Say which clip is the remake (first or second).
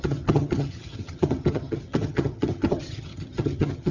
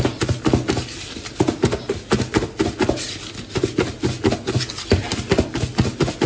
first